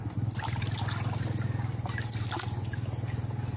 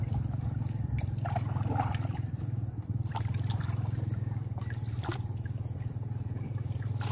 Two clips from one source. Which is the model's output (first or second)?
second